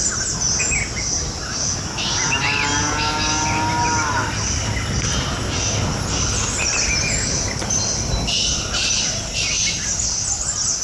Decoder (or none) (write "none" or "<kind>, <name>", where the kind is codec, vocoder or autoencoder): none